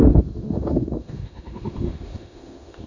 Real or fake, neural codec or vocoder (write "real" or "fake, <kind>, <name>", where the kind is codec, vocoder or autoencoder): fake, autoencoder, DAC-VAE